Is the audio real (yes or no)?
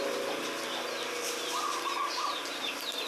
yes